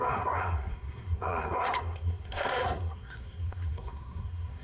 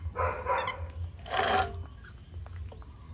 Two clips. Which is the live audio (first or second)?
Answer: second